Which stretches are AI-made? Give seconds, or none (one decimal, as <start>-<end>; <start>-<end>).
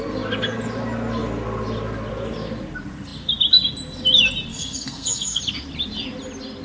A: 4.5-5.4